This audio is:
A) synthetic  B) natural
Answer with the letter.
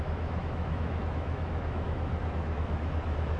A